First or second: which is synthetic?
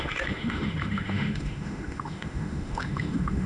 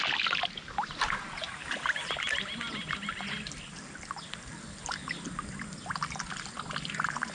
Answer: first